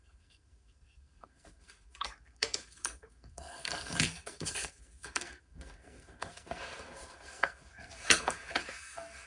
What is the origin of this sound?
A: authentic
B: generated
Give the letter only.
B